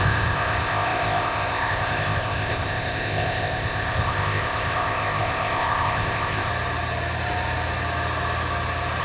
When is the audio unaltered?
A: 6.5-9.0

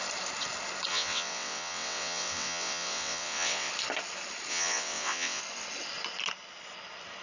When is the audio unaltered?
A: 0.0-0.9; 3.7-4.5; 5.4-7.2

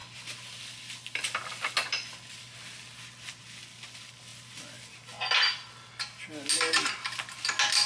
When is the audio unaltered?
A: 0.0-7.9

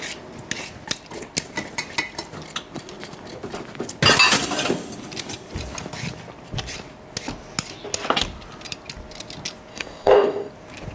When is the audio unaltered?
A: 0.0-9.7; 10.5-10.9

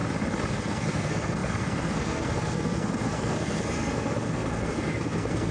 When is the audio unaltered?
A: 0.0-0.5

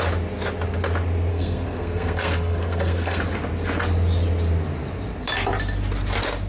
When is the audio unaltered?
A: 0.0-1.3; 3.2-6.5

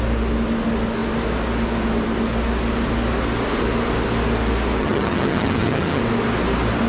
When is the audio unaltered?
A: 0.0-4.8; 6.0-6.9

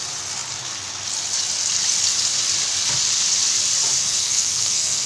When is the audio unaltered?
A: 0.0-4.0